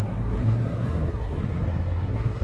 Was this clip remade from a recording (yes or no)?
yes